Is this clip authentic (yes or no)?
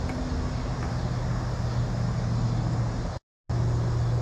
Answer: yes